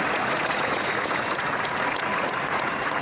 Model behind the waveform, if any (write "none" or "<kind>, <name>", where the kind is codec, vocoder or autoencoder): vocoder, Vocos